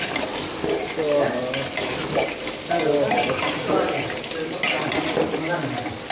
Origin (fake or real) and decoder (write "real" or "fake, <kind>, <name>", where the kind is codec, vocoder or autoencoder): real